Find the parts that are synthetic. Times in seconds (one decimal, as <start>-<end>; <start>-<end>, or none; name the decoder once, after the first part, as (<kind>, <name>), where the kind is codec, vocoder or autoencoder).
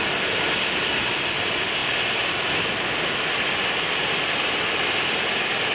none